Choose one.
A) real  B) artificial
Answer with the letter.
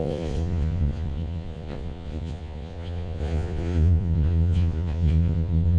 B